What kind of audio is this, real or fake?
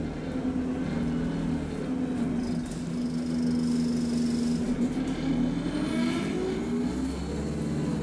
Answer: real